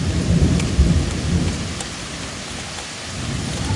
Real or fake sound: real